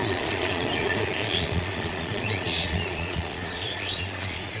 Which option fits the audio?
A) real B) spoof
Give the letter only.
B